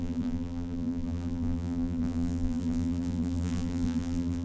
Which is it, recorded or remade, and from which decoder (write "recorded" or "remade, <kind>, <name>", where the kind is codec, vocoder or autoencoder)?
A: remade, vocoder, BigVGAN v2